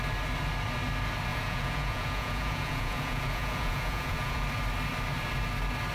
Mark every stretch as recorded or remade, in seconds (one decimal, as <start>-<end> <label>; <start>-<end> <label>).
0.0-1.3 recorded; 1.3-4.4 remade; 4.4-5.9 recorded